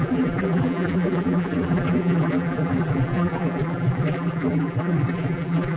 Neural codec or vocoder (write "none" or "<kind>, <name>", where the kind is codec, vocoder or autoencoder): vocoder, BigVGAN v2